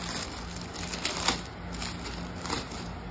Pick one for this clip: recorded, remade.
recorded